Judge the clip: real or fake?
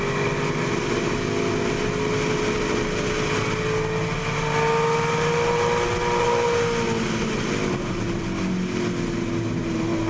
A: real